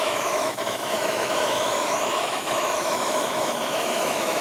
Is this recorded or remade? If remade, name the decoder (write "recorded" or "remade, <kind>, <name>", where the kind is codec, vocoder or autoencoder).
remade, autoencoder, DAC-VAE